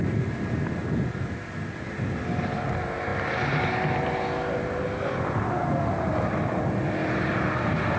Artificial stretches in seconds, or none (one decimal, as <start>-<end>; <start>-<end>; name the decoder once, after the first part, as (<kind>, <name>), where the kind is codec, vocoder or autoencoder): 7.0-8.0 (vocoder, BigVGAN v2)